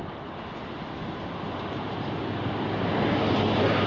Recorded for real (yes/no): yes